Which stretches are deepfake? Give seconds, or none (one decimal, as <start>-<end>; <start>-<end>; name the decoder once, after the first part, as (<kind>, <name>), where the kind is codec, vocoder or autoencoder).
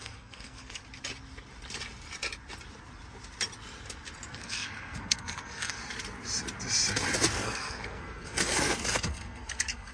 0.0-0.8 (codec, SNAC); 4.3-5.8; 7.3-9.9